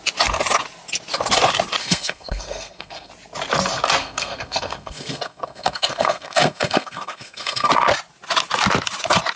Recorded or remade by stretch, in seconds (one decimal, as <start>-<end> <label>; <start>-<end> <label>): 0.0-1.8 recorded; 1.8-3.1 remade; 3.1-4.0 recorded; 4.0-7.7 remade; 7.7-9.4 recorded